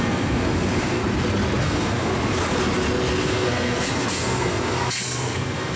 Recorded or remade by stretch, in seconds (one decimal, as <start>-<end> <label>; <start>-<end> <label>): 0.0-1.0 remade; 1.0-1.6 recorded; 1.6-2.1 remade; 2.1-3.2 recorded; 3.2-5.8 remade

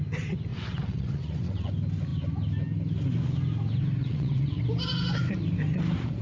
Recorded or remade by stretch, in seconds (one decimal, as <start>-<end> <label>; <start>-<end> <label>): 0.0-0.5 recorded; 0.5-1.7 remade; 1.7-4.0 recorded; 4.0-4.6 remade; 4.6-6.2 recorded

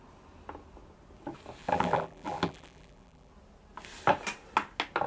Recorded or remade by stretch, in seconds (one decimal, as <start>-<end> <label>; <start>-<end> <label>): 0.0-1.6 recorded; 1.6-3.3 remade; 3.3-5.1 recorded

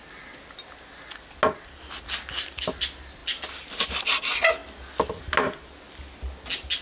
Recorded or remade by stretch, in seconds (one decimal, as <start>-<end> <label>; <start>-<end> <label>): 0.0-6.8 recorded